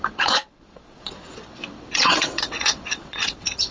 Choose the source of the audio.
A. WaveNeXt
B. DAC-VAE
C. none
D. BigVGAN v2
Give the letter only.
A